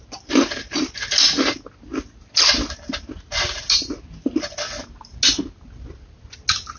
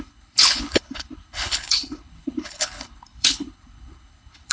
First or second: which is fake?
second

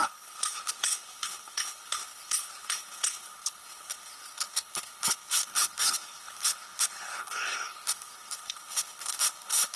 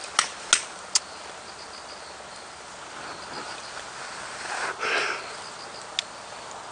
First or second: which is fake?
first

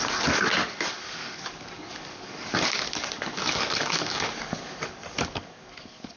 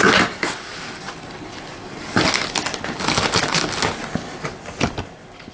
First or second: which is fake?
first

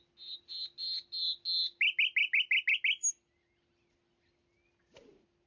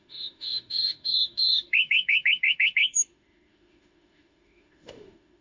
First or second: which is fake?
second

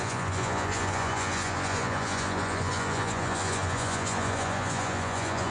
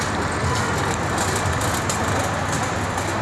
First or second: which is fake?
first